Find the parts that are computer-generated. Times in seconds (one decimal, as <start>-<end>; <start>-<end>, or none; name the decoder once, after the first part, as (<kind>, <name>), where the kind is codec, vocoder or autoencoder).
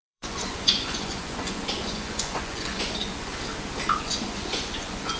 0.0-3.3 (vocoder, Vocos); 4.0-5.2